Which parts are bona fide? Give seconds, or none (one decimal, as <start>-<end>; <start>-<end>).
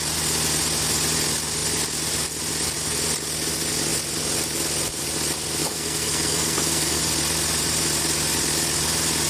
0.0-5.6; 7.0-9.3